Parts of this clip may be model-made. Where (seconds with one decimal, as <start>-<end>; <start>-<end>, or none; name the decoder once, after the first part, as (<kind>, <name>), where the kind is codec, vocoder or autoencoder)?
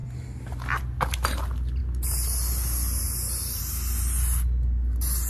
none